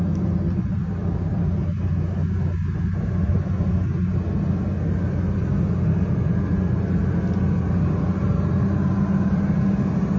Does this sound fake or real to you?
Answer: real